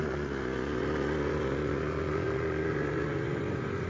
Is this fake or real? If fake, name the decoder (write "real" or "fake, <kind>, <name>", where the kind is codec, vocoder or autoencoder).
fake, vocoder, Vocos